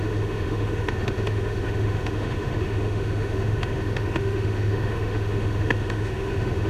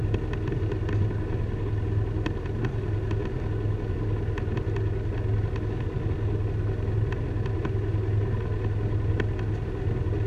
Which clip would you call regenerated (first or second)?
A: first